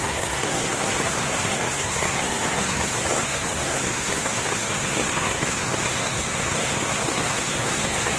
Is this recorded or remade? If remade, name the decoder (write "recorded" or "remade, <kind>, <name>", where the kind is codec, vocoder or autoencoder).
remade, codec, SNAC